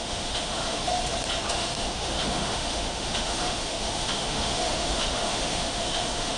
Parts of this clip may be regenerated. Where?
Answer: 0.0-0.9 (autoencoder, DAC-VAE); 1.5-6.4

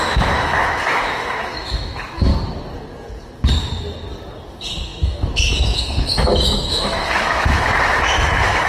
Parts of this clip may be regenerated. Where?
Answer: 0.0-2.3 (autoencoder, DAC-VAE); 4.5-8.7

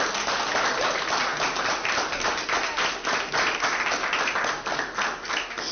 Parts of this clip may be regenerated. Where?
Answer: none

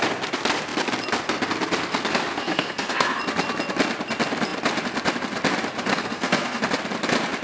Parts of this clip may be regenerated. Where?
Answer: 2.3-3.2 (codec, SNAC); 5.9-6.6